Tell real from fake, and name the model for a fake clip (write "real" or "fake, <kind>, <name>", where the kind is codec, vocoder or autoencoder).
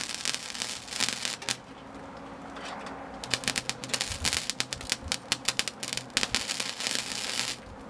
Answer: real